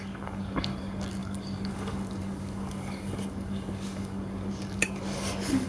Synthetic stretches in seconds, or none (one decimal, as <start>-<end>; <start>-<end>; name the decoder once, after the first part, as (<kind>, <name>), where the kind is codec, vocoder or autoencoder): 0.0-5.7 (codec, DAC)